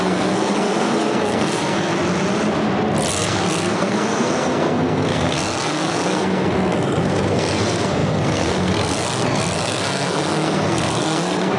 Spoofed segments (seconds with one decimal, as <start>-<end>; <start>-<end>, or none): 0.0-1.9; 3.1-11.6